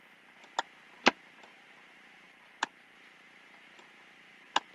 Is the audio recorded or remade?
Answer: recorded